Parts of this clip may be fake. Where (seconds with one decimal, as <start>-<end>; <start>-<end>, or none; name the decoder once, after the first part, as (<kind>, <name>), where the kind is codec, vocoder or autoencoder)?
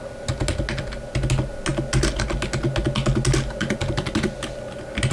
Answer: none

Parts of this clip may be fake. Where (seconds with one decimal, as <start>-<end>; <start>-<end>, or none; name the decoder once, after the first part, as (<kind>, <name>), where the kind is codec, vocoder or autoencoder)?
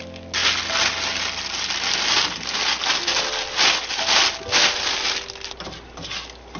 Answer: none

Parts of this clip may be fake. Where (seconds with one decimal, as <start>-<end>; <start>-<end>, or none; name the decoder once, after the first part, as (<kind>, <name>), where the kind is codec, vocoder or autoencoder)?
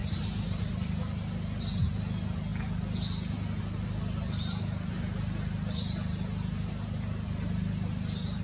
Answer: 0.0-0.6 (vocoder, BigVGAN v2)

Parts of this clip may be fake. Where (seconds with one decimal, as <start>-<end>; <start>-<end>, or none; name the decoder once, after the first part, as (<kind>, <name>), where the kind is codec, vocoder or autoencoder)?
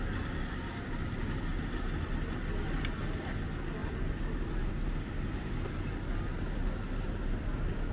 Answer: none